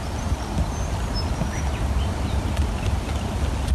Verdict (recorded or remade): recorded